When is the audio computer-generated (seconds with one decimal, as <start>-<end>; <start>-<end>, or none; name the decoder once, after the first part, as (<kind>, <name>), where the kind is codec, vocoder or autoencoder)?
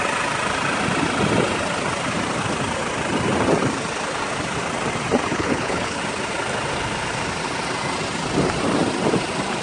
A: 5.3-6.0 (codec, HILCodec)